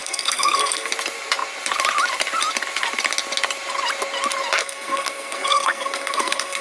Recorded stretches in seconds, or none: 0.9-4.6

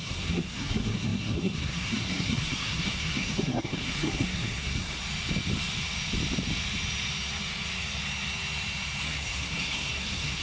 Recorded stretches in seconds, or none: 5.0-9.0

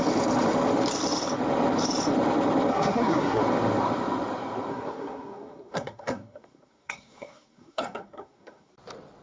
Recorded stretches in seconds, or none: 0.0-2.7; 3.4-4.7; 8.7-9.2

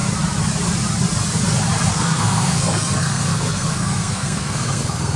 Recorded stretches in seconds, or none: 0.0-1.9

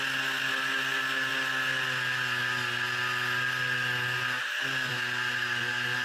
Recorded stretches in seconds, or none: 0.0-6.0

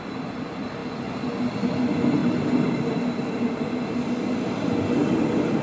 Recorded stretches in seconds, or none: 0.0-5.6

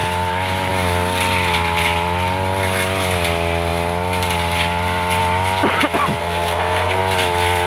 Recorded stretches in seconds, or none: 0.0-6.2; 7.0-7.7